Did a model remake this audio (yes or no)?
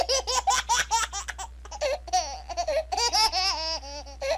no